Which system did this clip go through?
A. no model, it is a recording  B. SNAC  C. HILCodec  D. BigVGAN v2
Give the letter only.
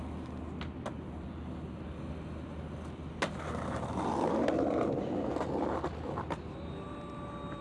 A